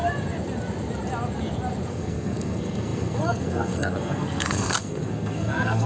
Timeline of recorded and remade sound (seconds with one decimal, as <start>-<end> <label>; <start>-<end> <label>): 0.0-1.9 recorded; 1.9-5.9 remade